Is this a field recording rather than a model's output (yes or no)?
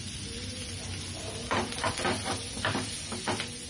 yes